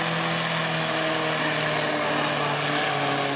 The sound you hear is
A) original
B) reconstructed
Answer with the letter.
A